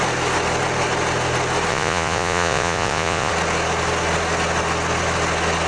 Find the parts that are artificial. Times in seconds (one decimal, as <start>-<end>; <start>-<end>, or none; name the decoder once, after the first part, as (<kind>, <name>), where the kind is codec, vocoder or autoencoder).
1.7-3.3 (vocoder, Vocos)